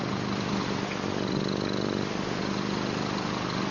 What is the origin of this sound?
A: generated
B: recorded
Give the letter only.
B